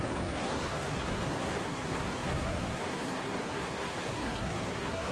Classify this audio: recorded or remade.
remade